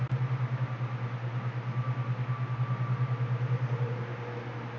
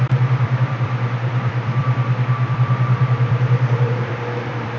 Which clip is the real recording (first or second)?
first